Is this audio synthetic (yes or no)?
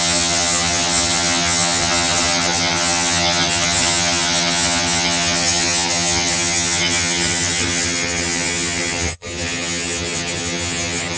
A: yes